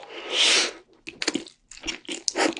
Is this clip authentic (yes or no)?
yes